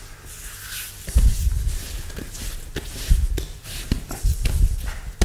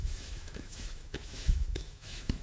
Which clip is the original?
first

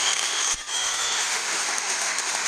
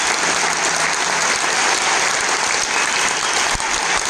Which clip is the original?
second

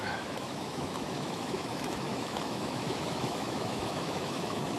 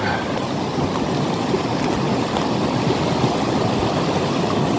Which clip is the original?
second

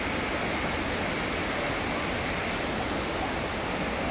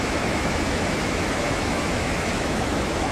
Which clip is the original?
first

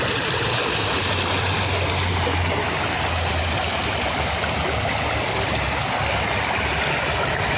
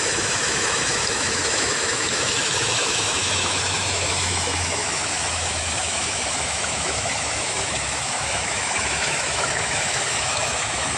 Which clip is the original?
first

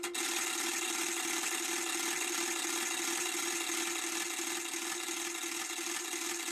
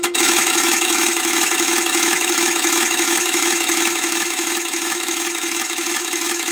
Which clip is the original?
first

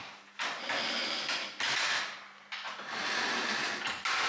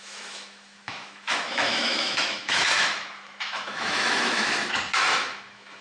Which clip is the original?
first